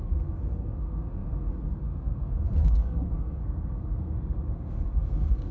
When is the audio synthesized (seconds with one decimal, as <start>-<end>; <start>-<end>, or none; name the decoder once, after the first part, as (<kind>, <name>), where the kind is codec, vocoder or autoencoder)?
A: 0.0-5.5 (codec, SNAC)